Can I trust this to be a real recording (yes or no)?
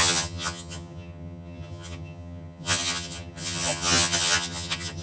no